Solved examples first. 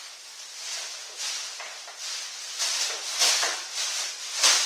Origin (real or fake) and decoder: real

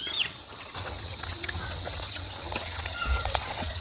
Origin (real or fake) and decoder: fake, vocoder, WaveNeXt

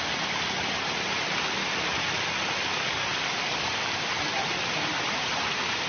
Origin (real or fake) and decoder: real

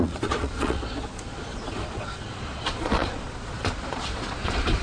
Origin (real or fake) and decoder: fake, vocoder, Vocos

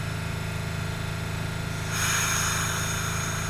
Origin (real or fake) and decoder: real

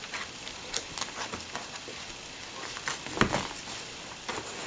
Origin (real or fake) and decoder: real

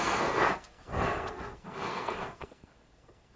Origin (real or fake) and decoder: fake, codec, SNAC